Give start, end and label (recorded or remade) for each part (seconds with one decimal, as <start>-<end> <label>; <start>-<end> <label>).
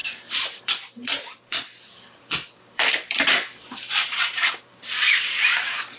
0.0-6.0 remade